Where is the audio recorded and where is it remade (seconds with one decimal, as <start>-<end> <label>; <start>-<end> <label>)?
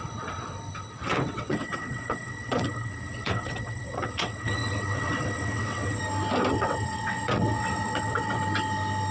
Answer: 0.0-1.0 recorded; 1.0-6.0 remade; 6.0-6.5 recorded; 6.5-8.4 remade; 8.4-9.1 recorded